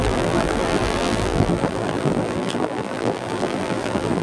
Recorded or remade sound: remade